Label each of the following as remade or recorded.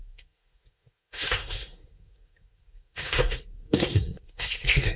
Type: remade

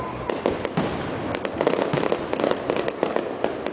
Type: recorded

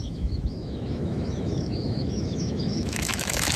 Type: remade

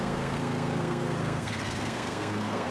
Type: remade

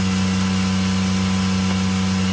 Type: recorded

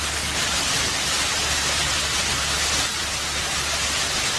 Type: recorded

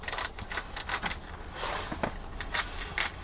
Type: recorded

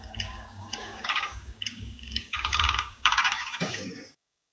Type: remade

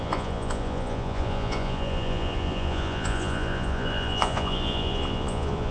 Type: remade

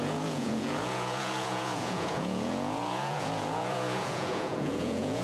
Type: remade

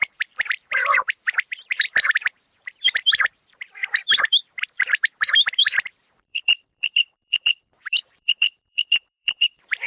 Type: remade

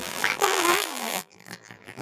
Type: remade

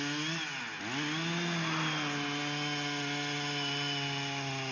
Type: recorded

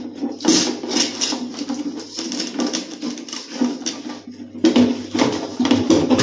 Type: recorded